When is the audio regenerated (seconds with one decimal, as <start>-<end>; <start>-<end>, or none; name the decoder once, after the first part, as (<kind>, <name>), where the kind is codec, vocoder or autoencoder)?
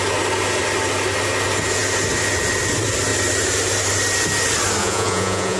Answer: 4.8-5.6 (vocoder, Vocos)